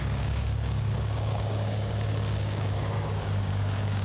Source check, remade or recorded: remade